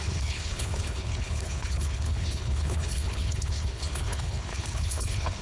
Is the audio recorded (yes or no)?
no